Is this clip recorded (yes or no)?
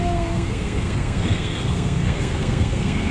no